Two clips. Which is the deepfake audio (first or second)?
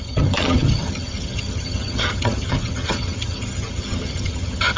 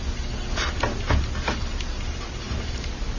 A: first